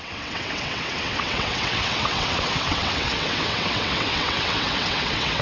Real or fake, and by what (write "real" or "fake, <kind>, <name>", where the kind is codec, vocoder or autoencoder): fake, vocoder, WaveNeXt